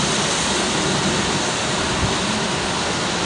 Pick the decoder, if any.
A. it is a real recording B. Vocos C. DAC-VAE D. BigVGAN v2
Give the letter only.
A